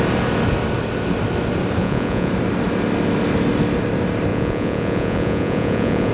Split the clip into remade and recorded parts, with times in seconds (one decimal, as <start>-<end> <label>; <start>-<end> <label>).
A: 0.0-1.8 recorded; 1.8-2.3 remade; 2.3-4.3 recorded; 4.3-6.1 remade